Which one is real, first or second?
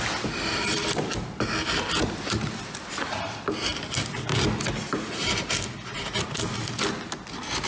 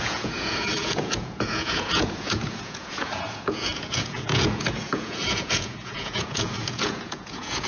first